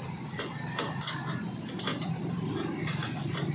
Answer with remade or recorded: recorded